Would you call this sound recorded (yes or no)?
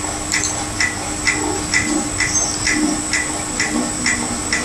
yes